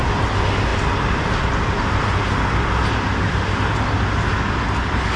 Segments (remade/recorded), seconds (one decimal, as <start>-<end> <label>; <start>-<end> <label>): 0.0-5.2 recorded